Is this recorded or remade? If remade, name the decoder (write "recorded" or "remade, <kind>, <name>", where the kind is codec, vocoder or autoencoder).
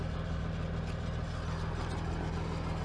recorded